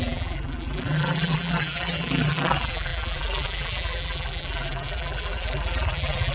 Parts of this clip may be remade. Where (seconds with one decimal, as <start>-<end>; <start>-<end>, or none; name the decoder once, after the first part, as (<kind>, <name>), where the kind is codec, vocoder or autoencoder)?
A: 0.0-6.3 (vocoder, BigVGAN v2)